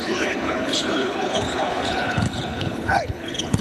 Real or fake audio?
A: fake